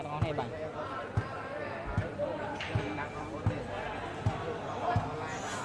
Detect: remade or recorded recorded